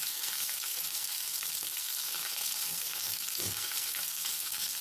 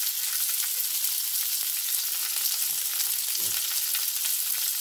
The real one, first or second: second